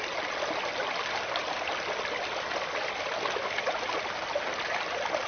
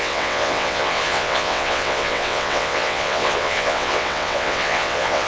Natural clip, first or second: first